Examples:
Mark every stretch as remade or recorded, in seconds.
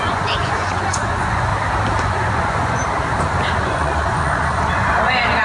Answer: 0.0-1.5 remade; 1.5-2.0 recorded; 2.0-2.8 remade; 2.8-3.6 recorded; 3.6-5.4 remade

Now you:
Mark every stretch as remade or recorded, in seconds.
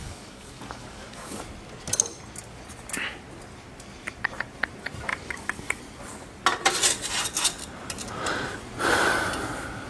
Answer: 0.0-1.4 remade; 1.4-5.1 recorded; 5.1-5.8 remade; 5.8-9.9 recorded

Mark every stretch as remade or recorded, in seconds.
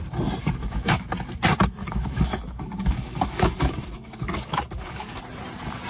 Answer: 0.0-0.4 recorded; 0.4-1.1 remade; 1.1-1.8 recorded; 1.8-5.2 remade; 5.2-5.9 recorded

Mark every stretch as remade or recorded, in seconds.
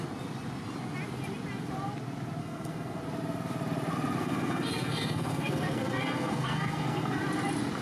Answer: 0.0-2.4 recorded; 2.4-3.0 remade; 3.0-4.2 recorded; 4.2-7.2 remade; 7.2-7.8 recorded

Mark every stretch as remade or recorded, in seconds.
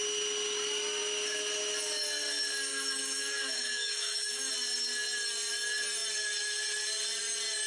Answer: 0.0-2.7 recorded; 2.7-4.5 remade; 4.5-7.7 recorded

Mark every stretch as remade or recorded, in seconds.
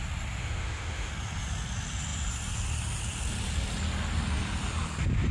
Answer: 0.0-0.4 recorded; 0.4-1.1 remade; 1.1-5.3 recorded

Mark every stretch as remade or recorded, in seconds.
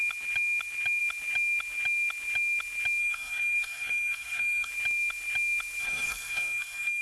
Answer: 0.0-3.0 recorded; 3.0-4.7 remade; 4.7-5.8 recorded; 5.8-7.0 remade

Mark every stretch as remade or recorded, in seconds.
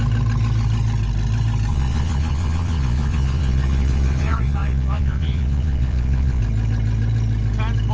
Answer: 0.0-1.7 recorded; 1.7-6.4 remade; 6.4-7.9 recorded